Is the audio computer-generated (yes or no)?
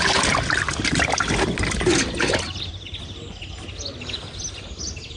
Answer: no